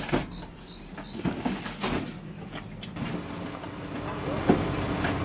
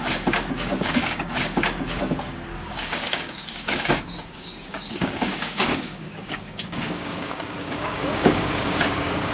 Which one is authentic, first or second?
first